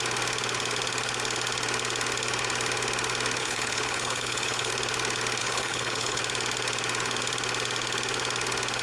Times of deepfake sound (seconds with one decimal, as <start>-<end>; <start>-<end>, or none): 3.4-4.7; 5.4-6.2